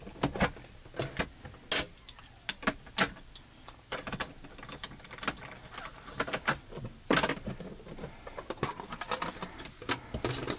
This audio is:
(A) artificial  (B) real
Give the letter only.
B